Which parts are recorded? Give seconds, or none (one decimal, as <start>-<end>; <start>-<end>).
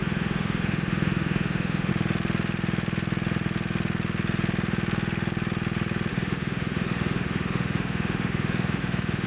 1.9-6.1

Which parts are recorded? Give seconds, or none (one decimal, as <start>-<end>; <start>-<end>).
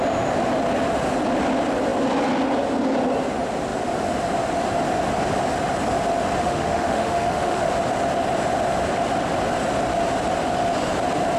0.0-6.4; 7.7-11.4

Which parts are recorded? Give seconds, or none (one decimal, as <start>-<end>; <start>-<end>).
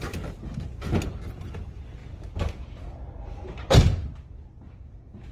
0.0-2.0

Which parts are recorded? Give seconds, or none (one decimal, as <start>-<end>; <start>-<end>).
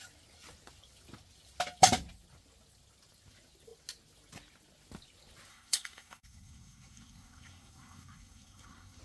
0.0-5.5